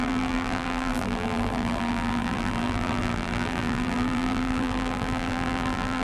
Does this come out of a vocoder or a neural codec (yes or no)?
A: yes